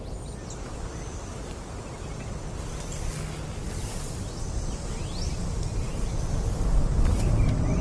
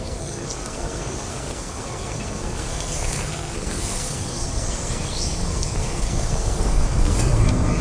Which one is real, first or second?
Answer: first